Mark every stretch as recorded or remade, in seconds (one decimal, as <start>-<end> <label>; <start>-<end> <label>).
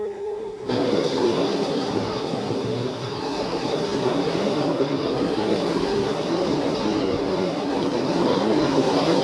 0.0-9.2 remade